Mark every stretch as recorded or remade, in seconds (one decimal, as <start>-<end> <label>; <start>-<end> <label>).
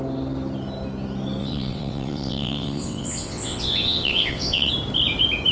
0.0-1.4 recorded; 1.4-4.7 remade; 4.7-5.5 recorded